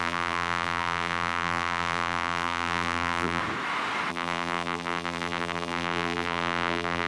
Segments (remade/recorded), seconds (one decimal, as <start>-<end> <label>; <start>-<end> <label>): 0.0-3.4 remade; 3.4-4.1 recorded; 4.1-7.1 remade

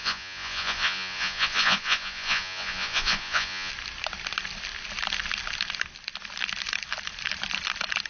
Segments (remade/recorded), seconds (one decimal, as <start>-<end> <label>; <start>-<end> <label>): 0.0-3.7 remade; 3.7-8.1 recorded

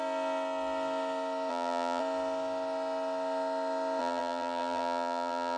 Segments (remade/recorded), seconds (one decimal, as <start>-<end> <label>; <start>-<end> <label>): 0.0-1.5 recorded; 1.5-2.0 remade; 2.0-4.0 recorded; 4.0-5.6 remade

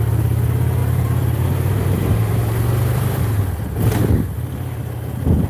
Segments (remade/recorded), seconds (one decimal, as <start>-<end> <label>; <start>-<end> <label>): 0.0-0.8 recorded; 0.8-3.2 remade; 3.2-5.5 recorded

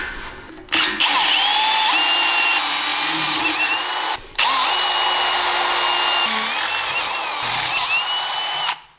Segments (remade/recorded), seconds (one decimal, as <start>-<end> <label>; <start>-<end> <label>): 0.0-9.0 recorded

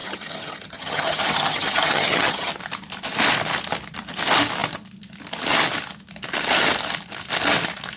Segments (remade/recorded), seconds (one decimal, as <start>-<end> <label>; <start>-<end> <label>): 0.0-2.5 remade; 2.5-8.0 recorded

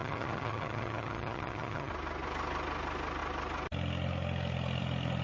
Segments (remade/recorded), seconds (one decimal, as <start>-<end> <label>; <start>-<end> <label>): 0.0-1.9 remade; 1.9-5.2 recorded

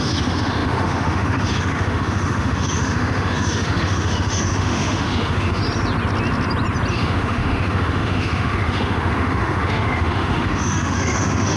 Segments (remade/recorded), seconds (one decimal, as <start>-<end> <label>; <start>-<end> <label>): 0.0-5.6 remade; 5.6-6.9 recorded; 6.9-11.6 remade